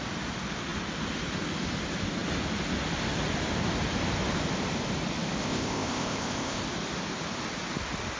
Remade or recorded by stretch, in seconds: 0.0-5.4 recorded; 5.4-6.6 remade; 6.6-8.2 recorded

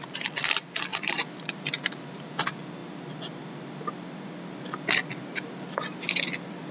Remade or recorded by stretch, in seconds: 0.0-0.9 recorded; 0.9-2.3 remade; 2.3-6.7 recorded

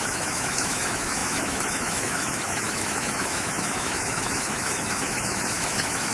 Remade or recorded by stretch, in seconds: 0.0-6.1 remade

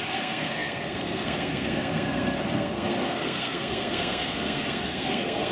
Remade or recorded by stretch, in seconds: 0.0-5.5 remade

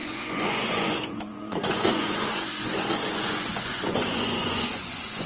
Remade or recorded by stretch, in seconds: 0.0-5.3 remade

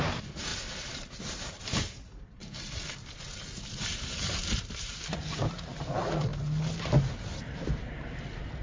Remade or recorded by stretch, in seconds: 0.0-0.5 remade; 0.5-1.3 recorded; 1.3-6.3 remade; 6.3-7.1 recorded; 7.1-8.6 remade